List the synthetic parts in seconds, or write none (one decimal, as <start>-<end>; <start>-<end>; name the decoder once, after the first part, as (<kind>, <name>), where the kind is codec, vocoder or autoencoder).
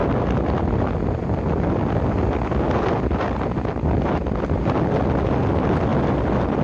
5.9-6.6 (vocoder, BigVGAN v2)